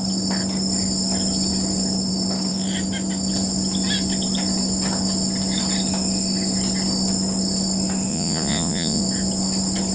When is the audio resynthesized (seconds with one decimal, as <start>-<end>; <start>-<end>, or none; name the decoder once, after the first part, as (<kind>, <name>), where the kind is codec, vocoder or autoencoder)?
8.1-9.0 (vocoder, Vocos)